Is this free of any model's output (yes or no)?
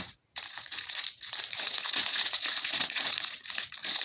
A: no